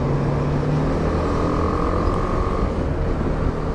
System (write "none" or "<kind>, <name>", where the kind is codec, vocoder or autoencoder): none